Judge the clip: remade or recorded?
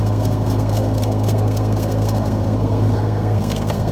remade